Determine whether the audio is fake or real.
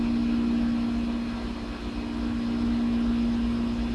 real